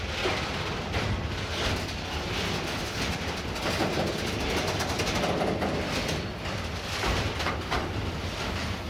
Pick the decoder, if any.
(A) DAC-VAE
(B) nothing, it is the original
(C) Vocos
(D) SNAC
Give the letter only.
B